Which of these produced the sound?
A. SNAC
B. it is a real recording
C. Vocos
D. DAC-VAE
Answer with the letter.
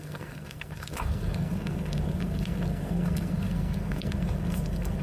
A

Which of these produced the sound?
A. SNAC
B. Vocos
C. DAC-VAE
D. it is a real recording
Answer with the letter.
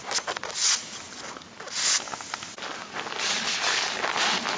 D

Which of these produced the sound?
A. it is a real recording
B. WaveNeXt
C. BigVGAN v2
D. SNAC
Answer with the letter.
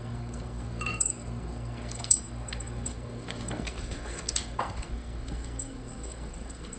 D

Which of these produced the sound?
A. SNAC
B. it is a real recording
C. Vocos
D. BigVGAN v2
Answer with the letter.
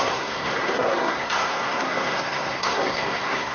A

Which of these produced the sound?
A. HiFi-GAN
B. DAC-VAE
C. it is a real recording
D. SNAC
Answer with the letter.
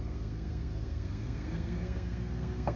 D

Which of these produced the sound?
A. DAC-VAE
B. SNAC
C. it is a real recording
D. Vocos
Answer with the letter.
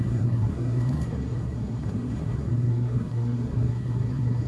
B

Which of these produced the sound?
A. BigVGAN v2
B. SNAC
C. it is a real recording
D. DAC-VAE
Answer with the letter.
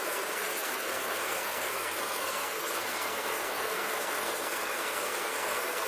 B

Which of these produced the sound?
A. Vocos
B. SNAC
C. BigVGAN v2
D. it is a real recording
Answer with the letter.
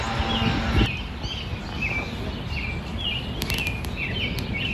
D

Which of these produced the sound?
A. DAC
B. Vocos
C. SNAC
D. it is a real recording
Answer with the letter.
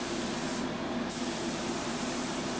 D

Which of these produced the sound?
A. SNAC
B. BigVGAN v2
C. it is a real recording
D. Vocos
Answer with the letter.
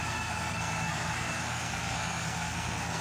A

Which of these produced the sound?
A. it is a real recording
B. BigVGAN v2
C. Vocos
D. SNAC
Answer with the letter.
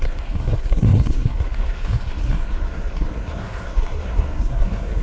D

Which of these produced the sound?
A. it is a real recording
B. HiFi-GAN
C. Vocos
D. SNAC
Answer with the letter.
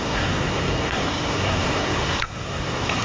D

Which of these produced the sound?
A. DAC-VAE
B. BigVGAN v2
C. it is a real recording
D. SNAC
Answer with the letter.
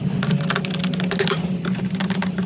C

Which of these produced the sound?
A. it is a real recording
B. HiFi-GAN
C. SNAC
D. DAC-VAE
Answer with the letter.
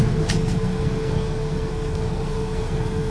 C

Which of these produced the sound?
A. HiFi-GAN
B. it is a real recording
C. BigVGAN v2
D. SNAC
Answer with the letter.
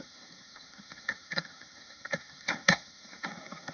D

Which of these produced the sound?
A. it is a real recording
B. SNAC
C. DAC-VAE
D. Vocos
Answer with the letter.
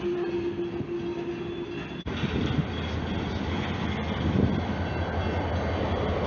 A